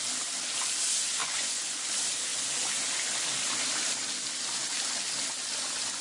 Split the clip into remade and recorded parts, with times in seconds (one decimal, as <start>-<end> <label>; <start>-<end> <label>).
0.0-1.2 recorded; 1.2-1.8 remade; 1.8-6.0 recorded